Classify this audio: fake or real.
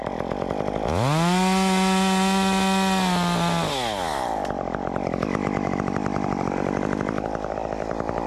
real